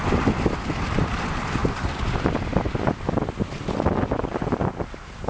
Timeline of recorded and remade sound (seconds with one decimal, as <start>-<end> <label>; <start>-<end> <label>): 0.0-5.3 recorded